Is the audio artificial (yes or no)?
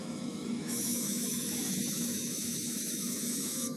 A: yes